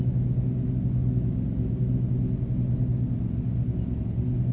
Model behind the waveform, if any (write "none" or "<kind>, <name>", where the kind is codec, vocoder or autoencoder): none